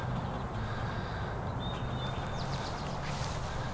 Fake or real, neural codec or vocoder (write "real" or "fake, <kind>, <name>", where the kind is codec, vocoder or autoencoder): real